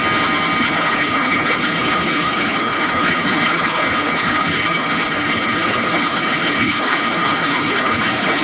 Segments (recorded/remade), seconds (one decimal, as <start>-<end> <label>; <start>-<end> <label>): 0.0-0.6 recorded; 0.6-8.4 remade